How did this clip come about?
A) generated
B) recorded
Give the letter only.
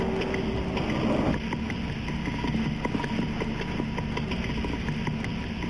B